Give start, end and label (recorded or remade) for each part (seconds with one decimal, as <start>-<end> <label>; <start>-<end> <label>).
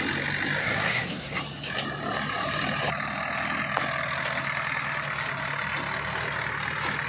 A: 0.0-0.6 recorded; 0.6-1.4 remade; 1.4-7.1 recorded